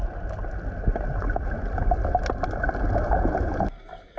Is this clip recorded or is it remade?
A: recorded